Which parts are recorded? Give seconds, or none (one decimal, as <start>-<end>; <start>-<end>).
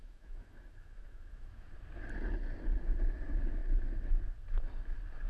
1.7-5.3